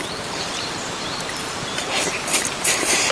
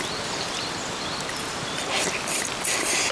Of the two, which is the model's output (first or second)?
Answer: first